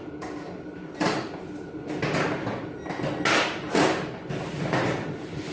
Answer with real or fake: real